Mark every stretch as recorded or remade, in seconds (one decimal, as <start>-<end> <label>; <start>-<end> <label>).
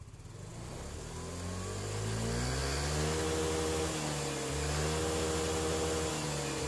0.0-6.7 recorded